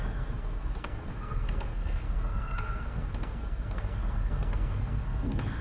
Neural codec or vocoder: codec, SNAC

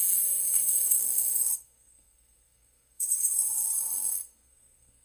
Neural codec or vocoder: codec, SNAC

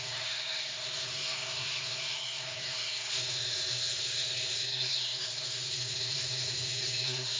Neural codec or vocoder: codec, SNAC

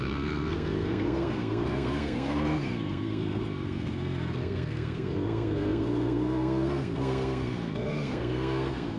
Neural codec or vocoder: codec, SNAC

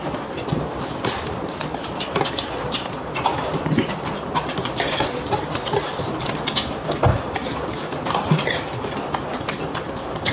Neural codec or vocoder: none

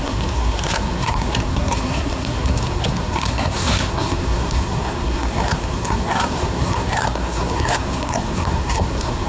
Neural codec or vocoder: codec, SNAC